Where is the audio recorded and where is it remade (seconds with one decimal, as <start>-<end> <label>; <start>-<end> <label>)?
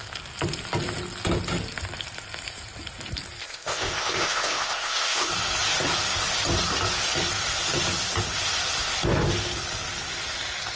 0.0-3.4 recorded; 3.4-5.3 remade; 5.3-10.8 recorded